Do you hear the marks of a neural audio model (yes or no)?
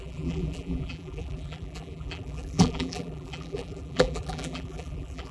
yes